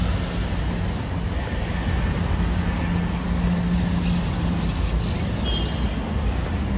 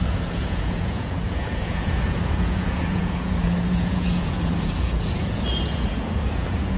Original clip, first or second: first